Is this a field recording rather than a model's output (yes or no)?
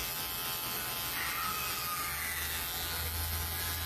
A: yes